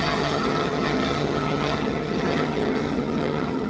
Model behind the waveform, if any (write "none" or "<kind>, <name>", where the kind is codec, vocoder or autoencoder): vocoder, HiFi-GAN